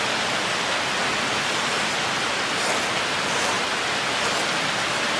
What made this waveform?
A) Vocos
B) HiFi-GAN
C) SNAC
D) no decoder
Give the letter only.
D